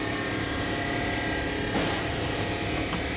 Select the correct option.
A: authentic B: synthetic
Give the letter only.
A